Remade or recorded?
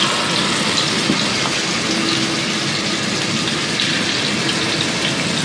recorded